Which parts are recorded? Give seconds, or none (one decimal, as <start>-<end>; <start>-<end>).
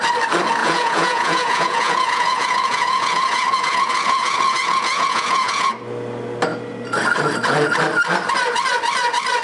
0.0-0.6; 5.7-9.4